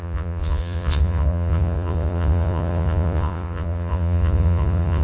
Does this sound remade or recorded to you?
remade